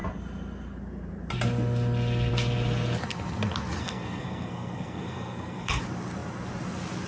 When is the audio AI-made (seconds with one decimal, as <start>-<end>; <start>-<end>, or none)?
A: 3.8-5.8